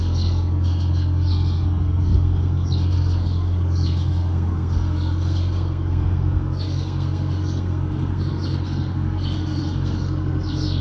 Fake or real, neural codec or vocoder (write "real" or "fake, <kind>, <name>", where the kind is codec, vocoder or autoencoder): fake, codec, SNAC